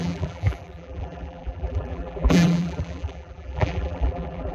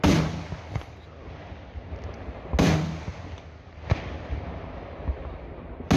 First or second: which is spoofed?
first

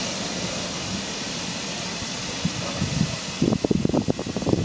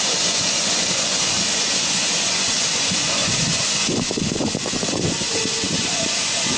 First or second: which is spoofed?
second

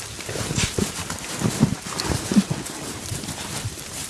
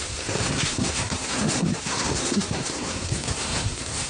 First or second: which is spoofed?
second